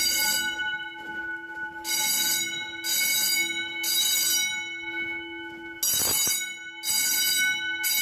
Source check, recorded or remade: recorded